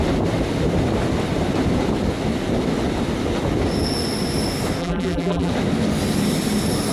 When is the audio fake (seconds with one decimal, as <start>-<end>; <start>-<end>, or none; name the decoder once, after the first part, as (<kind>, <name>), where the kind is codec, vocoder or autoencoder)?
4.8-5.5 (vocoder, BigVGAN v2)

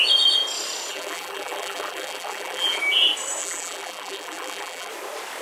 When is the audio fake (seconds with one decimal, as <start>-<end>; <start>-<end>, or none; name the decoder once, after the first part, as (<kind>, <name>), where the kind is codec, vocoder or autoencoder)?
0.9-2.8 (vocoder, BigVGAN v2); 3.4-4.9

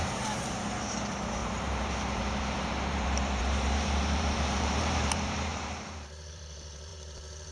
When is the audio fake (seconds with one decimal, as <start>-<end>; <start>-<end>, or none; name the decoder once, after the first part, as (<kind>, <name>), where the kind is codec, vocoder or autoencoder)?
0.0-7.5 (vocoder, BigVGAN v2)